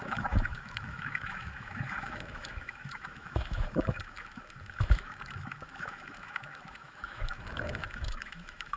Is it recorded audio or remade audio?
remade